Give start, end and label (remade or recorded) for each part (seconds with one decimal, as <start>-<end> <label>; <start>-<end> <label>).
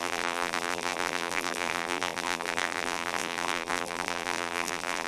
0.0-5.1 remade